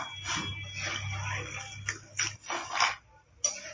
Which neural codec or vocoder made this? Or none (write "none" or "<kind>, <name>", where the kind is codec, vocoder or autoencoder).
none